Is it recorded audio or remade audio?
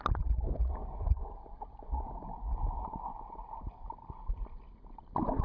recorded